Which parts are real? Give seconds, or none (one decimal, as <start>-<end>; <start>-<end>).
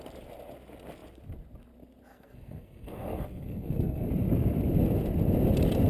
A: 0.0-2.1; 4.1-5.9